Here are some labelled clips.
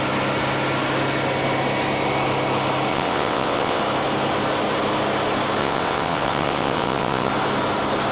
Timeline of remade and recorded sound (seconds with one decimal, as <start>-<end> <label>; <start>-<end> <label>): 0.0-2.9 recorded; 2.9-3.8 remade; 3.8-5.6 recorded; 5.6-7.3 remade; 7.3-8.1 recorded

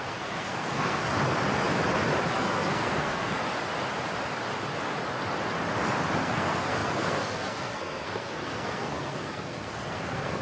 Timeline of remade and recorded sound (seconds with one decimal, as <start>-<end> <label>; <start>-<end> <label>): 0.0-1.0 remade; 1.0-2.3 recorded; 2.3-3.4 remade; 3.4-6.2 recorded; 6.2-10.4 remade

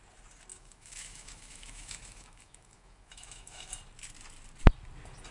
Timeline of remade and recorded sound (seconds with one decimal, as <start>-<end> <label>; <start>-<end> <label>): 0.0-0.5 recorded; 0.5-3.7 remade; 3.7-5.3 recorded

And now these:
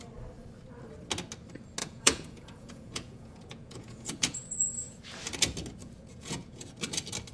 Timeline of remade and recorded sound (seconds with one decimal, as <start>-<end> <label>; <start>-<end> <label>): 0.0-1.8 recorded; 1.8-5.0 remade; 5.0-5.8 recorded; 5.8-6.7 remade; 6.7-7.3 recorded

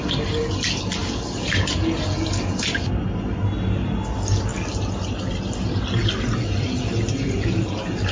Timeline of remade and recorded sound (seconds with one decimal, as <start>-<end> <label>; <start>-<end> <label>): 0.0-8.1 recorded

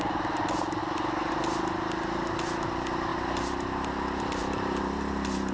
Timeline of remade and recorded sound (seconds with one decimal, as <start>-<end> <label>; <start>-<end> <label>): 0.0-5.5 recorded

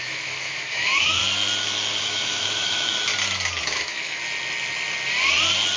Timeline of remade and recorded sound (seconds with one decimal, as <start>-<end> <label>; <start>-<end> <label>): 0.0-1.2 remade; 1.2-2.0 recorded; 2.0-3.1 remade; 3.1-3.6 recorded; 3.6-4.2 remade; 4.2-5.8 recorded

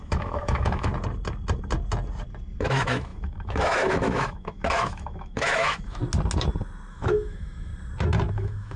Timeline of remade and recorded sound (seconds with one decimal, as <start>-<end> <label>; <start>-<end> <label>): 0.0-0.9 remade; 0.9-2.6 recorded; 2.6-6.0 remade; 6.0-6.9 recorded; 6.9-7.7 remade; 7.7-8.3 recorded; 8.3-8.8 remade